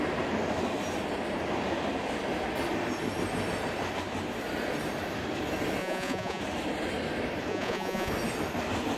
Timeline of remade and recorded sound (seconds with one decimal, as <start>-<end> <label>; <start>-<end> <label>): 0.0-5.8 recorded; 5.8-6.4 remade; 6.4-7.5 recorded; 7.5-8.1 remade; 8.1-9.0 recorded